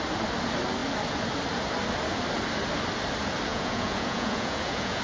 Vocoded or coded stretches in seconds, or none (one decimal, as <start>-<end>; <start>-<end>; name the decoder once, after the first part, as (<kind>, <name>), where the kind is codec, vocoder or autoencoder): 3.5-5.0 (vocoder, Vocos)